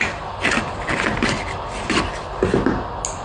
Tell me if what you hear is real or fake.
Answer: real